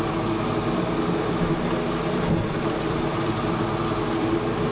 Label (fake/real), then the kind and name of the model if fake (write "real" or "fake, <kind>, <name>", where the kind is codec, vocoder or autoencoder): real